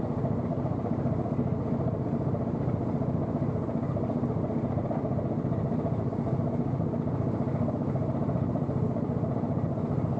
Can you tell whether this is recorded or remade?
recorded